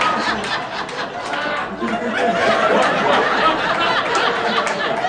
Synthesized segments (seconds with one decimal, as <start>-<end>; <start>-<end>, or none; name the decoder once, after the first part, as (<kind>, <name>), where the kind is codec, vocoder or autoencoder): none